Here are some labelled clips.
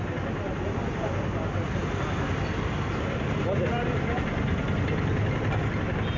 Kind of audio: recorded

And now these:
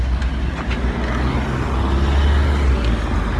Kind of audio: recorded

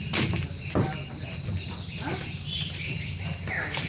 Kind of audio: remade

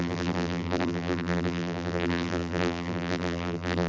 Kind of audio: remade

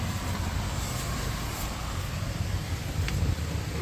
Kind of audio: recorded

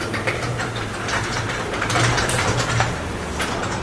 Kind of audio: remade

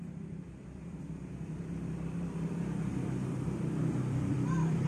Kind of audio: remade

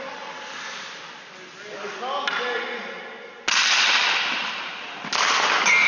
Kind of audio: recorded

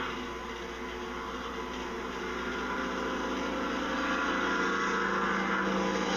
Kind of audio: recorded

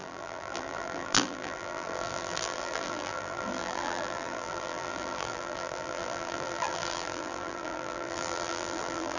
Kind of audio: remade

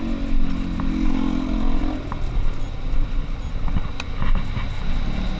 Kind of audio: recorded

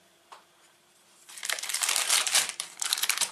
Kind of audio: remade